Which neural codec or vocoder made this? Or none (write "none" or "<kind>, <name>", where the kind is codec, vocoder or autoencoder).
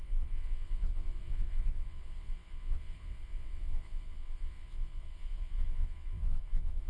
vocoder, WaveNeXt